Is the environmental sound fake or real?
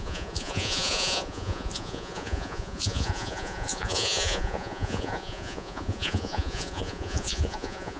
fake